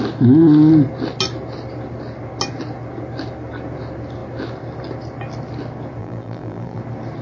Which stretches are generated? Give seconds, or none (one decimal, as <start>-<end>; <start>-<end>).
6.0-6.8